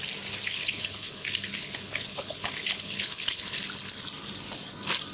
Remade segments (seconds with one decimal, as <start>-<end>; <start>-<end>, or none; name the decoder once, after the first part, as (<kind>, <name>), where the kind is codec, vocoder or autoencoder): 0.5-3.6 (codec, HILCodec)